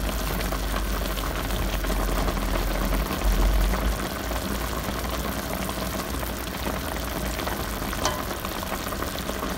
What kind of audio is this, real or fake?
real